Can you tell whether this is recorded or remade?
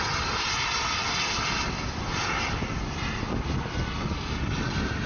recorded